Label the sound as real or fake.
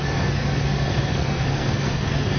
fake